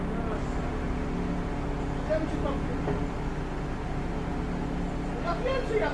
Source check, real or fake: real